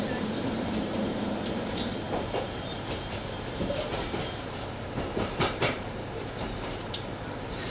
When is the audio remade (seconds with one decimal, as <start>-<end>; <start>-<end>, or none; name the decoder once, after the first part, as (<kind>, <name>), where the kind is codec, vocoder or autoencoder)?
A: 0.0-1.9 (vocoder, BigVGAN v2); 2.8-7.7